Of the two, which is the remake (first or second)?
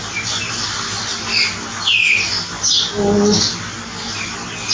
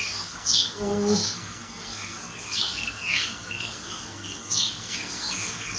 second